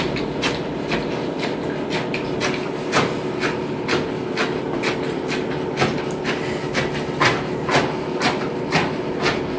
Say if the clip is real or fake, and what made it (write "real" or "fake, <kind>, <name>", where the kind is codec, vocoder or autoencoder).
real